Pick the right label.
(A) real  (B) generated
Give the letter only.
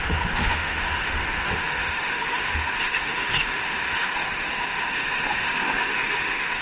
B